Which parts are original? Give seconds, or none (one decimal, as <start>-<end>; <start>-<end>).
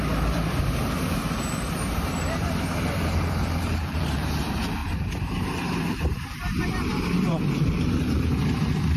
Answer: none